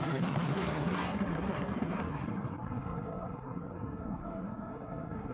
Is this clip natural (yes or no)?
no